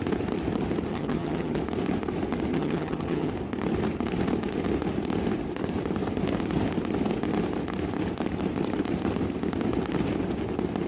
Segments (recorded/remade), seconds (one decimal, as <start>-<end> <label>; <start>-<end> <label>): 0.0-0.9 recorded; 0.9-1.6 remade; 1.6-2.5 recorded; 2.5-3.3 remade; 3.3-10.9 recorded